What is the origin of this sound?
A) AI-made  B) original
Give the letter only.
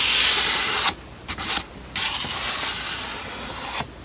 B